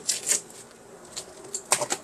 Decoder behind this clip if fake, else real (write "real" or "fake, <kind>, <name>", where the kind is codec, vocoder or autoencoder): real